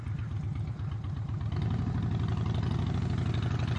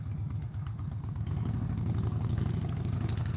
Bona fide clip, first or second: first